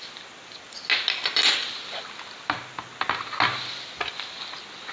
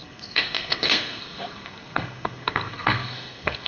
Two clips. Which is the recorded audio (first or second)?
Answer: first